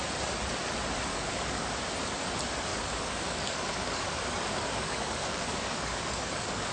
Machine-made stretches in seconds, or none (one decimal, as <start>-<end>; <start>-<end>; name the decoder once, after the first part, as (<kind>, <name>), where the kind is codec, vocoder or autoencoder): 1.1-1.7 (codec, DAC); 2.7-6.7

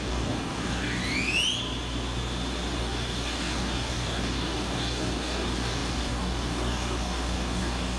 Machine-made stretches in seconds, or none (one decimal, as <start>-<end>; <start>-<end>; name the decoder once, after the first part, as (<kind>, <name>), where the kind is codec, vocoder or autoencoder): 0.0-1.0 (codec, DAC); 2.8-8.0

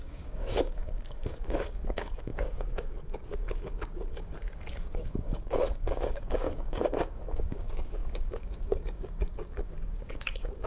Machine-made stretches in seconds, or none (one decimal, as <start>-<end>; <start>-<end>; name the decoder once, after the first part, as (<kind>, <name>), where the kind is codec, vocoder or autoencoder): 0.0-10.7 (codec, DAC)

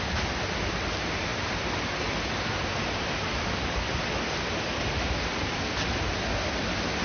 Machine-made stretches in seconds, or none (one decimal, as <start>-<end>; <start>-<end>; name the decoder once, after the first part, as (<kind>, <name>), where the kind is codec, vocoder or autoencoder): none

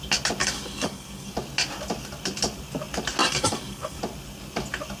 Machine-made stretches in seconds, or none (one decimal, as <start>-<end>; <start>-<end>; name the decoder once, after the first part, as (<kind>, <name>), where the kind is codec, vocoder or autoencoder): 0.4-1.3 (codec, DAC); 3.2-4.0

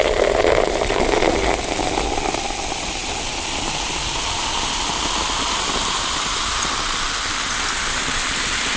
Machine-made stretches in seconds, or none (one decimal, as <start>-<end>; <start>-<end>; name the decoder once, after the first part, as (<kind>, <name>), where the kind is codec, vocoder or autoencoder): none

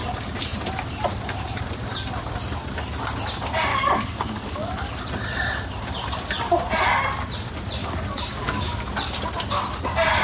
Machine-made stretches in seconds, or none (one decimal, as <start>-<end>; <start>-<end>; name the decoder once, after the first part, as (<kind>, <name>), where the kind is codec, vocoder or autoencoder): 3.7-4.9 (codec, DAC); 7.8-8.8